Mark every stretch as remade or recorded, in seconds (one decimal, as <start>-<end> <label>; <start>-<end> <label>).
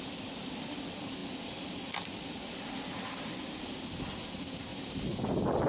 0.0-4.7 recorded; 4.7-5.2 remade; 5.2-5.7 recorded